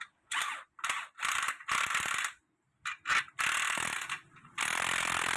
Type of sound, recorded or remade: recorded